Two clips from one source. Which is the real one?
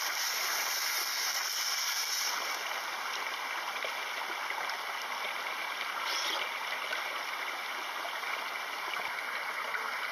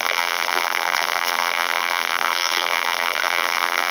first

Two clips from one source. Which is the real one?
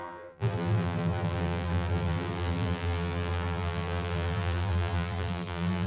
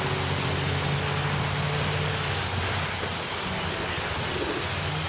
second